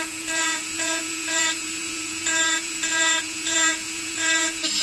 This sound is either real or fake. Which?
fake